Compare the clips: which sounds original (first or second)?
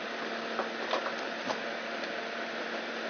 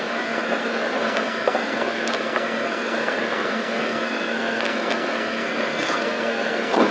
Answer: first